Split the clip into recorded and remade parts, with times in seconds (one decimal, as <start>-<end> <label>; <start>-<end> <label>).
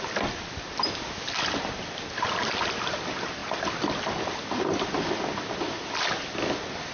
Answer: 0.0-6.9 recorded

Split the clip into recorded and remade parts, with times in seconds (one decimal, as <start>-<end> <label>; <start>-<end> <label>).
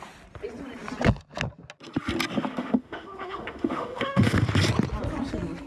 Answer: 0.0-2.5 recorded; 2.5-4.4 remade; 4.4-5.7 recorded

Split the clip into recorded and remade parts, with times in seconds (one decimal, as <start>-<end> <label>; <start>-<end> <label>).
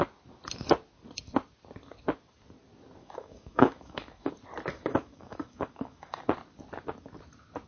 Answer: 0.0-3.0 recorded; 3.0-4.3 remade; 4.3-4.7 recorded; 4.7-6.2 remade; 6.2-7.7 recorded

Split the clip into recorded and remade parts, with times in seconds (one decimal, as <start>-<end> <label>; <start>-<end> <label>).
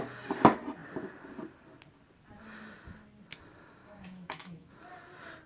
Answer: 0.0-3.8 recorded; 3.8-4.7 remade; 4.7-5.5 recorded